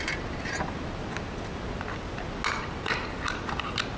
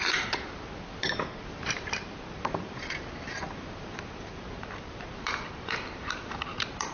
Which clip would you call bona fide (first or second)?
first